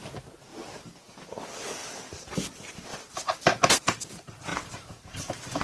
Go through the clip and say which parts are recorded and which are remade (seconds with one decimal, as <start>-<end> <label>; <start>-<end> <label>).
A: 0.0-1.8 recorded; 1.8-2.3 remade; 2.3-4.5 recorded; 4.5-5.6 remade